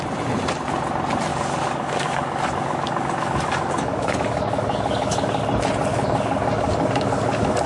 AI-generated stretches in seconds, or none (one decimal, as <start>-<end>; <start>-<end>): 1.3-5.4; 5.9-7.7